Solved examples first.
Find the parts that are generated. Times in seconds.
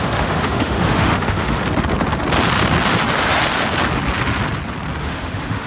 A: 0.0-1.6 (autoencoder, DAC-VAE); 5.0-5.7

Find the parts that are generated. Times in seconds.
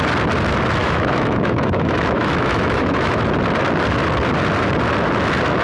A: 0.8-3.2 (autoencoder, DAC-VAE)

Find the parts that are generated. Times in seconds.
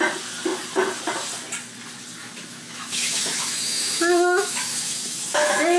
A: 2.2-5.8 (autoencoder, DAC-VAE)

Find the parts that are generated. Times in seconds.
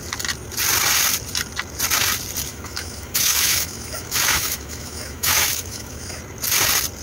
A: 2.5-6.2 (autoencoder, DAC-VAE)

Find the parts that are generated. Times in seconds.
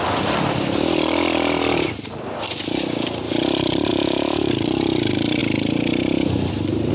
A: 3.9-4.5 (autoencoder, DAC-VAE)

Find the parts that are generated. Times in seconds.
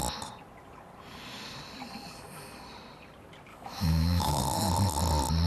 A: 3.5-4.4 (autoencoder, DAC-VAE)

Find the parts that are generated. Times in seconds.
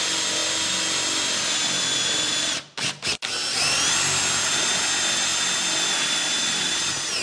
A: none